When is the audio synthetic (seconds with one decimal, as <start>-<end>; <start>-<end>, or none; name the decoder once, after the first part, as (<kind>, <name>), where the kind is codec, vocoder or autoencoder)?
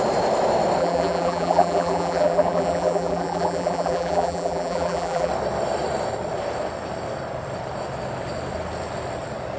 0.8-5.3 (vocoder, BigVGAN v2)